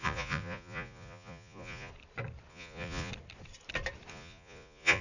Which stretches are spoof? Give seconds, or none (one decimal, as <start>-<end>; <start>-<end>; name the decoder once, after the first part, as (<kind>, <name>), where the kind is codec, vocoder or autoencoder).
0.0-1.9 (vocoder, Vocos); 2.5-3.1; 4.1-5.0